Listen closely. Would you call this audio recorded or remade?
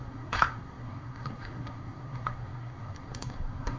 remade